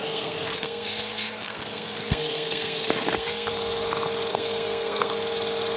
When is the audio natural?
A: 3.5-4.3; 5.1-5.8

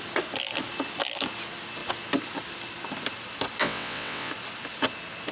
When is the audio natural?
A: 0.0-3.6; 4.3-5.3

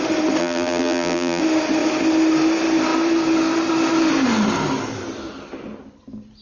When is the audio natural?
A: 0.0-0.4; 1.4-6.4

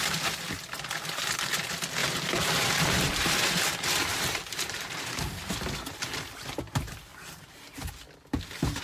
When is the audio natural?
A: 0.0-2.0; 5.2-7.1; 7.9-8.8